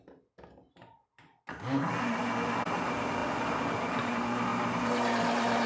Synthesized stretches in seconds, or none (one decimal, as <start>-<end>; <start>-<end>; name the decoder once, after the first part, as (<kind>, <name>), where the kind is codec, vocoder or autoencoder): none